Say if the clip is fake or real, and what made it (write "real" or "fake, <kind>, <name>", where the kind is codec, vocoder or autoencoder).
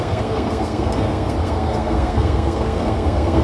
fake, codec, SNAC